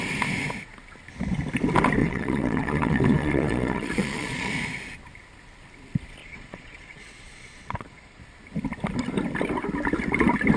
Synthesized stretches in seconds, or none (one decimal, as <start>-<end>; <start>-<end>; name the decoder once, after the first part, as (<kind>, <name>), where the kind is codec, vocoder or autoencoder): 2.0-4.5 (vocoder, Vocos); 6.2-8.2